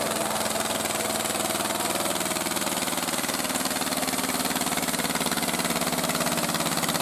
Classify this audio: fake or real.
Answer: real